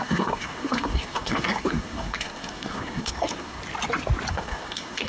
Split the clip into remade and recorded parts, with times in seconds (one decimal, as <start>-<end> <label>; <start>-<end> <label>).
0.0-3.6 remade; 3.6-4.3 recorded; 4.3-5.1 remade